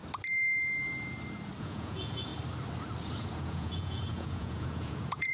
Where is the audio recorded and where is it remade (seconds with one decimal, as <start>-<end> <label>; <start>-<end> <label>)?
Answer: 0.0-1.6 recorded; 1.6-2.3 remade; 2.3-3.2 recorded; 3.2-5.3 remade